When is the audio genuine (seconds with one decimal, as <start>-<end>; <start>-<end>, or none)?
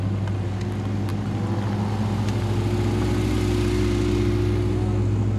0.0-5.4